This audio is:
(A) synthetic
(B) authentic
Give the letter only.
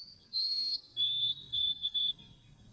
A